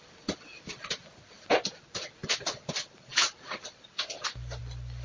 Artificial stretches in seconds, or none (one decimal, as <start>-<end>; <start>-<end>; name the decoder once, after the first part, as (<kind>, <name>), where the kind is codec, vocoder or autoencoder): none